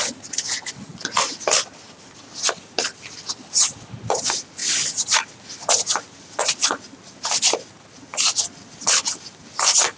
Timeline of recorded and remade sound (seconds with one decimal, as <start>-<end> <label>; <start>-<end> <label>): 0.0-10.0 recorded